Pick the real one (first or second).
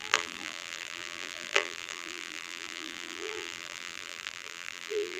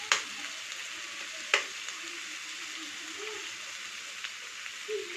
second